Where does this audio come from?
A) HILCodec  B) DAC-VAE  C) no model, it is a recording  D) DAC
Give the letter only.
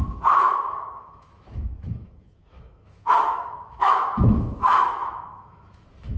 B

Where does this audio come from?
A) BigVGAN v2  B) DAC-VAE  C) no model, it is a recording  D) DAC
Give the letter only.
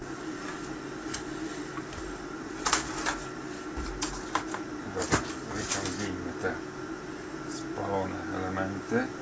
C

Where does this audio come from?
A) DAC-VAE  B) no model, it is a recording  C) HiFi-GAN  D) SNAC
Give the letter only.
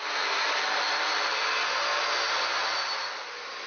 B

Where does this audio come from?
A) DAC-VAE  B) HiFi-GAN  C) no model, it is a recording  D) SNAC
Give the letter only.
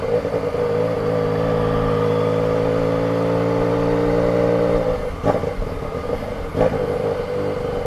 C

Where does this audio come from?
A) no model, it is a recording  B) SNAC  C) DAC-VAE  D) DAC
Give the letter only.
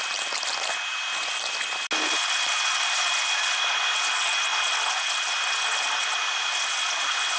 A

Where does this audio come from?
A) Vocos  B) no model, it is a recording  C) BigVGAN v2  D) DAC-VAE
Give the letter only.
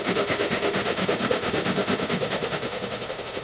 D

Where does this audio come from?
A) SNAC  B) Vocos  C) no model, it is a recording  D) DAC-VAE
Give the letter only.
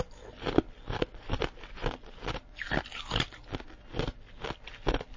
C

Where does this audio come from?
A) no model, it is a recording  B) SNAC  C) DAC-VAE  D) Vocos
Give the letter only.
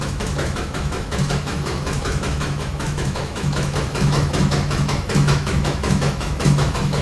C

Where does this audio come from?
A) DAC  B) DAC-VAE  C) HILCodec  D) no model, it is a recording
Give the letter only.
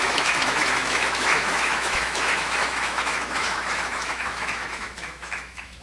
B